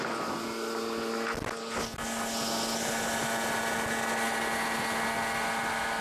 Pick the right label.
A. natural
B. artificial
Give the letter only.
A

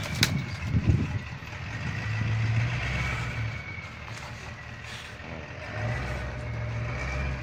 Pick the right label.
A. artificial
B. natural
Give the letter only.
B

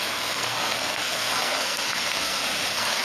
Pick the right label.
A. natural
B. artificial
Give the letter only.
B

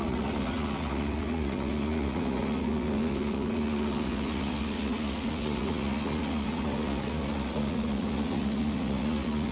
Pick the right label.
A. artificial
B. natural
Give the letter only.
A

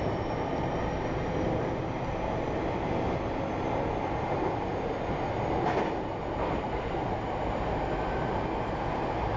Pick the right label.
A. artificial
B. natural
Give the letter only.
B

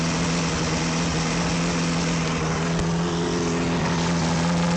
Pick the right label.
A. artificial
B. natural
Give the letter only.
B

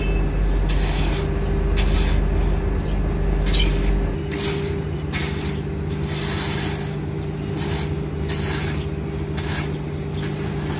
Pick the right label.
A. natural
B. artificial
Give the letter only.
A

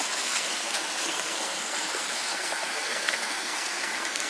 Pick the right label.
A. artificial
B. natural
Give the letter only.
A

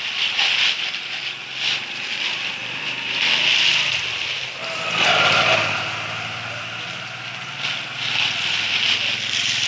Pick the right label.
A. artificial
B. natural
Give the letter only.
B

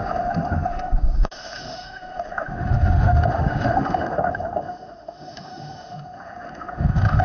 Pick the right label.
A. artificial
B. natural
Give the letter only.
A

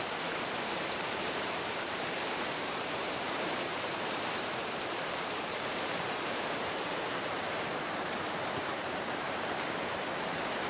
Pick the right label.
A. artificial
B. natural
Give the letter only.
A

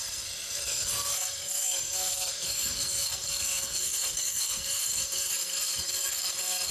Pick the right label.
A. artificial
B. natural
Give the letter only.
A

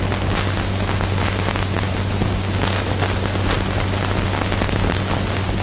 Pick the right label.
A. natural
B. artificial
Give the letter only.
A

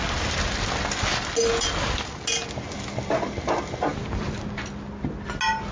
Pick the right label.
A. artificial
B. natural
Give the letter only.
B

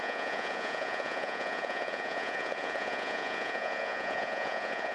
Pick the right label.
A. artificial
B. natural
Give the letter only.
A